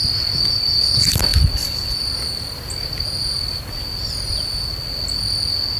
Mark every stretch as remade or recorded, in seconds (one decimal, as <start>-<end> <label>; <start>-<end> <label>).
0.0-5.8 recorded